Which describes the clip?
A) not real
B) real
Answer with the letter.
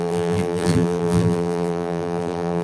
A